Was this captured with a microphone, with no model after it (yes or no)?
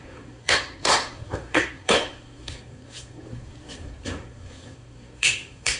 no